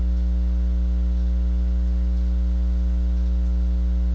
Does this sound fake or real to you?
real